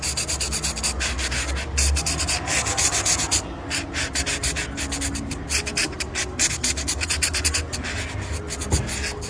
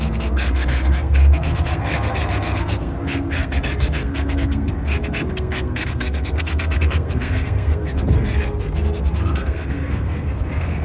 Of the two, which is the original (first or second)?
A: first